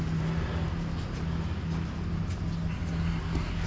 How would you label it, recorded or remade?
recorded